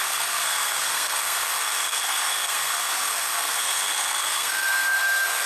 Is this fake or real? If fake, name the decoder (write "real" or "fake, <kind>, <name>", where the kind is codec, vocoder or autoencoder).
fake, codec, SNAC